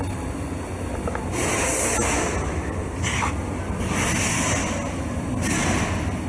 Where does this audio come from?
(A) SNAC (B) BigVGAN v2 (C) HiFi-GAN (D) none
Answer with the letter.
D